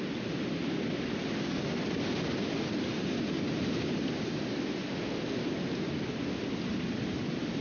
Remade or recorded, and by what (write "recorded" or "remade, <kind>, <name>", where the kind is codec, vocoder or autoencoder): recorded